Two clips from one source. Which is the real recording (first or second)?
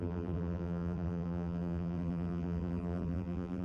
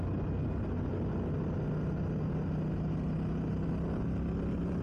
second